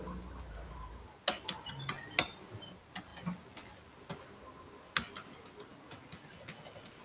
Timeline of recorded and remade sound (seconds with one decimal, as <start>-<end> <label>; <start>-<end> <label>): 0.0-7.0 recorded